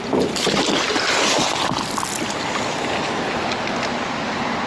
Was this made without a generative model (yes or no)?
yes